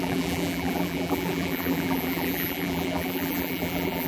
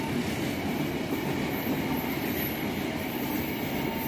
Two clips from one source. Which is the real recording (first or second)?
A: second